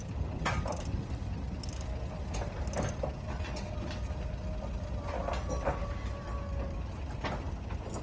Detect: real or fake real